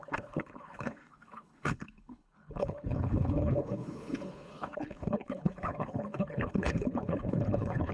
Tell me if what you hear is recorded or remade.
remade